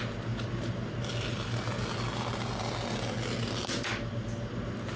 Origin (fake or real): real